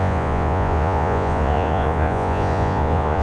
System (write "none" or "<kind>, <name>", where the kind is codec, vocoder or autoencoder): vocoder, Vocos